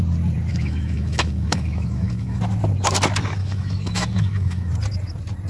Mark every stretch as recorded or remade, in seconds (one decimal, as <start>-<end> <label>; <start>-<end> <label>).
0.0-0.5 recorded; 0.5-2.4 remade; 2.4-3.4 recorded; 3.4-4.7 remade; 4.7-5.5 recorded